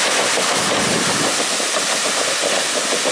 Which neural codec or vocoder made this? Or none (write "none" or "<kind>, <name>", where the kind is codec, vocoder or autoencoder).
none